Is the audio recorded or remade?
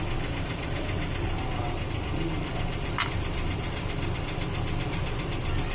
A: recorded